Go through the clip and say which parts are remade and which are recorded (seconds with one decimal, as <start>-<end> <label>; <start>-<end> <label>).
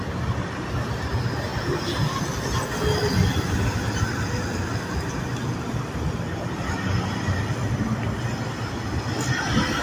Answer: 0.0-9.8 recorded